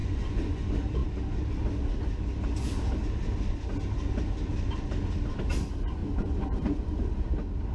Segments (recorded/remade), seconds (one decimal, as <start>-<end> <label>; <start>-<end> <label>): 0.0-0.6 remade; 0.6-6.0 recorded; 6.0-7.1 remade; 7.1-7.7 recorded